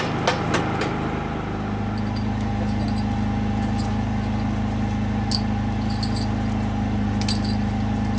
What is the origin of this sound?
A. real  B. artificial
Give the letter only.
A